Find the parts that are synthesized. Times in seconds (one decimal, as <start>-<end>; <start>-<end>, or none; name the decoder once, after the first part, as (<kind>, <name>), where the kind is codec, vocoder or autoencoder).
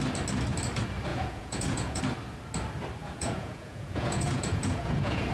1.1-2.0 (vocoder, Vocos); 3.0-5.3